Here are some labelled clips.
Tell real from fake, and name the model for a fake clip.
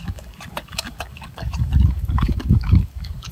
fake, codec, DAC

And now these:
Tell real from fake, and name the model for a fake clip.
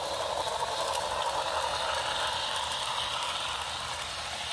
real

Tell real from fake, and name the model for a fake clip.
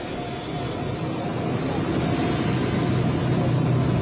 real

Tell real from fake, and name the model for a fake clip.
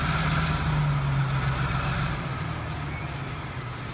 real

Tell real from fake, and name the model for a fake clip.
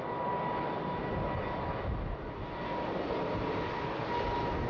real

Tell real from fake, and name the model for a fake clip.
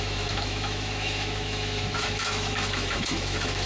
fake, autoencoder, DAC-VAE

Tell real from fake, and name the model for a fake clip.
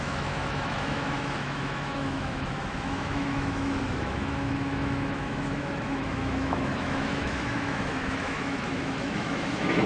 fake, autoencoder, DAC-VAE